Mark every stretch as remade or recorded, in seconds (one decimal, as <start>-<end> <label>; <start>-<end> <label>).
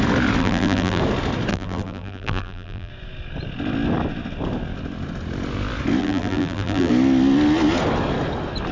0.0-0.4 recorded; 0.4-1.0 remade; 1.0-1.5 recorded; 1.5-2.9 remade; 2.9-6.0 recorded; 6.0-6.9 remade; 6.9-8.7 recorded